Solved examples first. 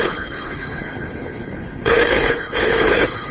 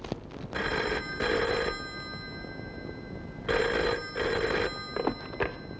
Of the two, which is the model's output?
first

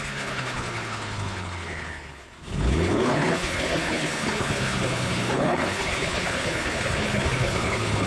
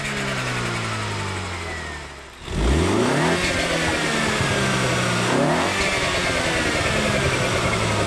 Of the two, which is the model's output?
first